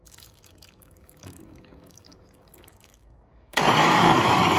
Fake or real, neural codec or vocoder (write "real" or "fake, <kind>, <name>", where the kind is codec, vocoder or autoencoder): fake, codec, DAC